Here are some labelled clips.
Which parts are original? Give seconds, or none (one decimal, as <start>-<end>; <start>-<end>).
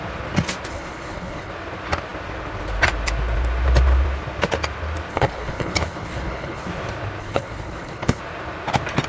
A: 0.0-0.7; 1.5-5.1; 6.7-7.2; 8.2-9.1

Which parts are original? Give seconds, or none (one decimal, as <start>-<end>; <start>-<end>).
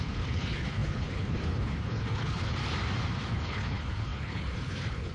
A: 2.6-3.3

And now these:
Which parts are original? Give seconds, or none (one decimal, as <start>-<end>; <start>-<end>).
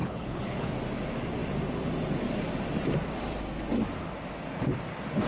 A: 0.7-5.3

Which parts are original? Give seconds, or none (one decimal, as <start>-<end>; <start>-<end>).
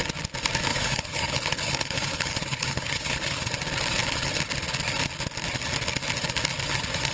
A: 0.0-0.7; 3.5-7.1